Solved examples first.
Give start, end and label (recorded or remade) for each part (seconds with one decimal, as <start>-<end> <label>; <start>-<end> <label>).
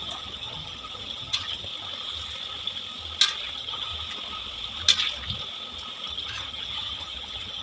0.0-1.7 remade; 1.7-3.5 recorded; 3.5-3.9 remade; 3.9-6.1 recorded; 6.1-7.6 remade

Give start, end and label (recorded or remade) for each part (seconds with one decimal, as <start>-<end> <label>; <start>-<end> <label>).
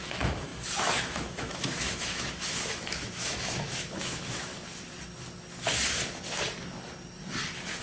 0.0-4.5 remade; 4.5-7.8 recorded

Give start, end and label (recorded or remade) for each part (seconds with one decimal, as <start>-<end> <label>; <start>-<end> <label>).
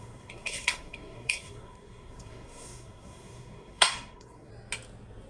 0.0-4.5 remade; 4.5-5.3 recorded